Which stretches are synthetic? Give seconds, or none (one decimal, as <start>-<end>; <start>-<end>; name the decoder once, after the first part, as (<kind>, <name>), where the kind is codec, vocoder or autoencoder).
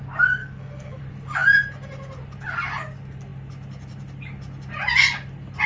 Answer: 0.4-1.0 (autoencoder, DAC-VAE)